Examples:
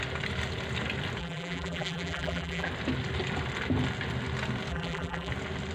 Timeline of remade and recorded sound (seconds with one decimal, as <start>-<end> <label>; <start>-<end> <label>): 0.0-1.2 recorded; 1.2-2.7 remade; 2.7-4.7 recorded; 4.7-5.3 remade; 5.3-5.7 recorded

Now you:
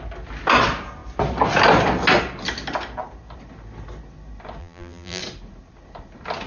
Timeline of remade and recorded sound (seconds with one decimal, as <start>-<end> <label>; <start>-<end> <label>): 0.0-4.6 recorded; 4.6-5.2 remade; 5.2-6.5 recorded

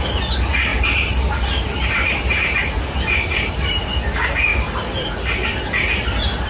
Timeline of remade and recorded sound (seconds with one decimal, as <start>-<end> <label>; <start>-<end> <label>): 0.0-0.7 recorded; 0.7-3.9 remade; 3.9-6.5 recorded

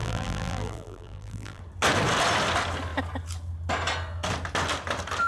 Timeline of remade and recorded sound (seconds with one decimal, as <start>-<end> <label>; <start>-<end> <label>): 0.0-1.6 remade; 1.6-5.3 recorded

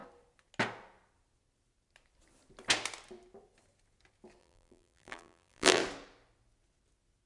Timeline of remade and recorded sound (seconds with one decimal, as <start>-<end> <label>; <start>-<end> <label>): 0.0-4.4 recorded; 4.4-5.8 remade; 5.8-7.3 recorded